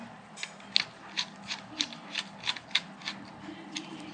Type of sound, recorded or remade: recorded